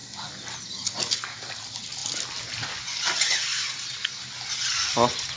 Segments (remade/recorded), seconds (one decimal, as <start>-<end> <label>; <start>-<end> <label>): 0.0-5.4 recorded